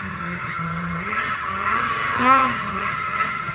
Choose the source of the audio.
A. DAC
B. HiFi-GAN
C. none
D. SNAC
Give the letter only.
B